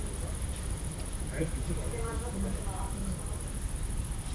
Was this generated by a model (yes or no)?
yes